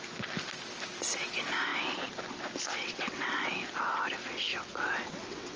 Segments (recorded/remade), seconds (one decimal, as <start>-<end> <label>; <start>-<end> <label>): 0.0-2.8 recorded; 2.8-3.5 remade; 3.5-4.5 recorded; 4.5-5.6 remade